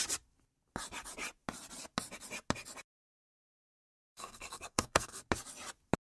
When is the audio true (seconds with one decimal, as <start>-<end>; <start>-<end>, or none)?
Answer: 0.0-3.5; 5.2-6.2